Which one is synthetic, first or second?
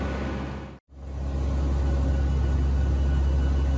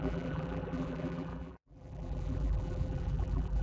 second